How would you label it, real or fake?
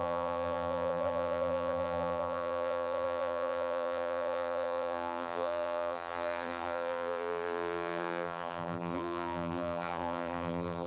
fake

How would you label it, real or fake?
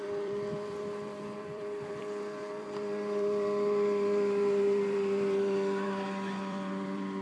fake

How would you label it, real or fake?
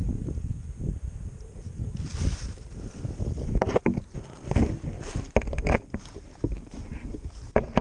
real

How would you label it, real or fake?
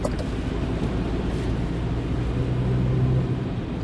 real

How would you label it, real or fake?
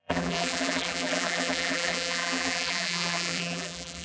fake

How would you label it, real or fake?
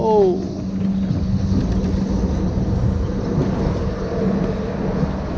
real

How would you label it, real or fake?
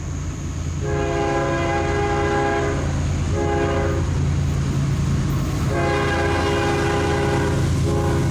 real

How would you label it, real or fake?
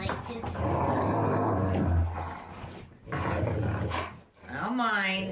real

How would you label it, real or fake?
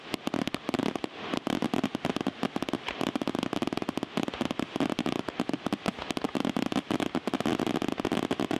real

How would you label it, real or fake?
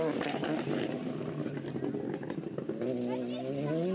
real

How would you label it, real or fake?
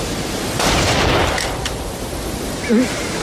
fake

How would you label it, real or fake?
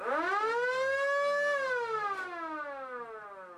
real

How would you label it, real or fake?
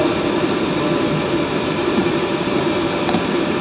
fake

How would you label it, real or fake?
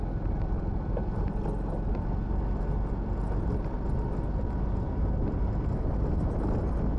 real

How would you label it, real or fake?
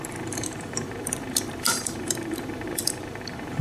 fake